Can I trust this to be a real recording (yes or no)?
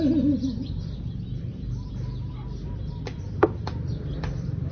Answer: no